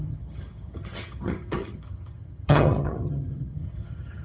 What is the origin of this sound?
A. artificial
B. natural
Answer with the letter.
A